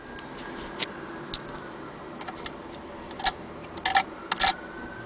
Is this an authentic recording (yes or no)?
yes